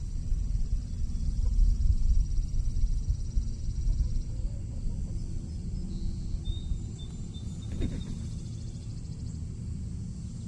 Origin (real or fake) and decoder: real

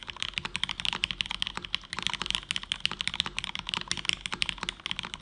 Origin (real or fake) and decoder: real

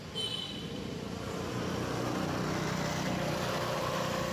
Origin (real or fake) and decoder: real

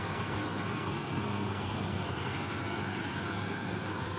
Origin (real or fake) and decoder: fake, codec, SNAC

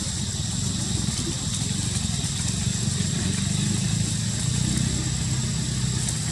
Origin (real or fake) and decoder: real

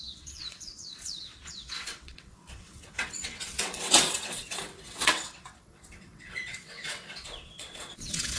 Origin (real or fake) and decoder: fake, vocoder, WaveNeXt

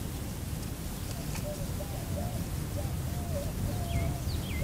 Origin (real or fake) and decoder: real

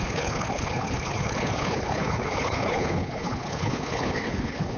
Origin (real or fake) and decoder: fake, codec, HILCodec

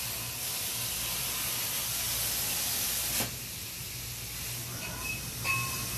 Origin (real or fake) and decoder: real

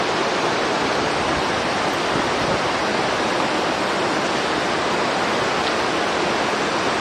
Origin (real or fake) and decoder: real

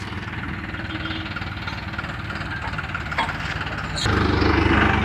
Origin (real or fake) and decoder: real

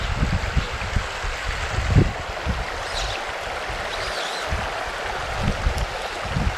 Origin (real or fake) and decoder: real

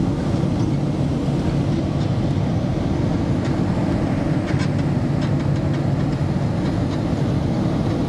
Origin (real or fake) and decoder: real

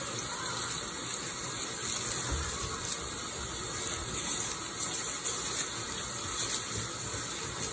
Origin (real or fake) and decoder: real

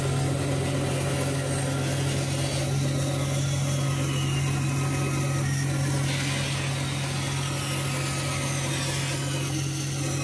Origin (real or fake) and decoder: real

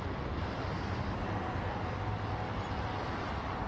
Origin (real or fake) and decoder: fake, vocoder, BigVGAN v2